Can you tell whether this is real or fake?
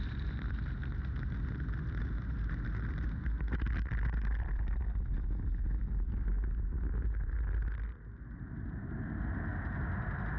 real